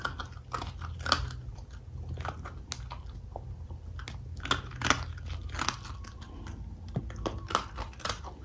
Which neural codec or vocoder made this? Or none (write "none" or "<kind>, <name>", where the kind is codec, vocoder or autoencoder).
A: none